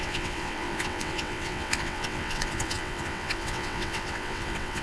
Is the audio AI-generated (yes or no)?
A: yes